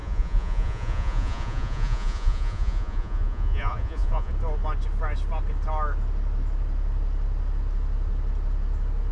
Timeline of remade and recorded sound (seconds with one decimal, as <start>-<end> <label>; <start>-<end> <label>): 0.0-4.3 remade; 4.3-9.1 recorded